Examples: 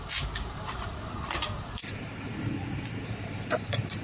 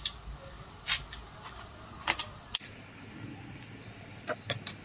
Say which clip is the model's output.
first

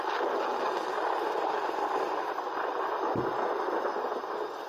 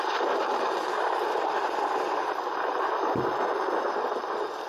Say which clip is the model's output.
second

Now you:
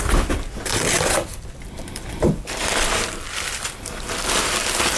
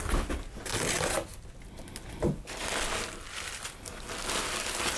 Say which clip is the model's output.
first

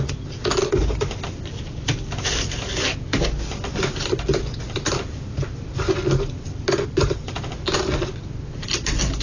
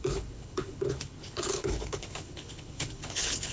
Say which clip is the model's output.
second